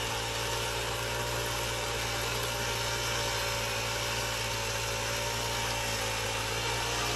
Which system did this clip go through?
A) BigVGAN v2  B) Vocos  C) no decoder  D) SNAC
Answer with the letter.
C